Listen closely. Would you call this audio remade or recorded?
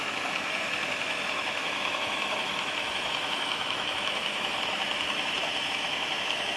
remade